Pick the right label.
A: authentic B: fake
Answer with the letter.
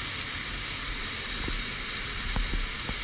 A